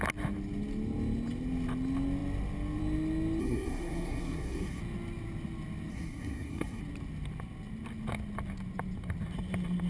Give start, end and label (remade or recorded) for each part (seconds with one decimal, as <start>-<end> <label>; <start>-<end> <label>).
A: 0.0-3.4 recorded; 3.4-4.8 remade; 4.8-5.9 recorded; 5.9-6.8 remade; 6.8-9.9 recorded